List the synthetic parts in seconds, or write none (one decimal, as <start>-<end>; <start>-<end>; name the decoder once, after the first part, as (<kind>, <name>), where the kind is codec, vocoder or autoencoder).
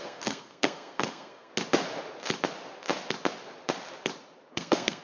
0.0-1.5 (codec, SNAC); 4.5-5.0